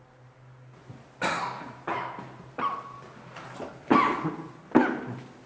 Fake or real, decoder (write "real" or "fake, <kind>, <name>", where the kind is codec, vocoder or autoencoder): real